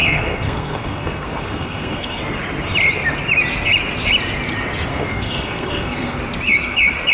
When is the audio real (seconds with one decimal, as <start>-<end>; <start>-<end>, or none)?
2.2-4.9; 6.2-7.1